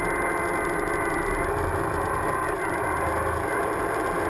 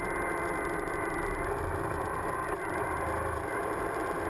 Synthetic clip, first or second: second